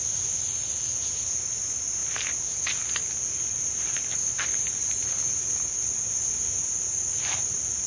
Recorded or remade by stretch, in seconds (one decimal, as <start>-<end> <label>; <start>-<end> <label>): 0.0-7.9 recorded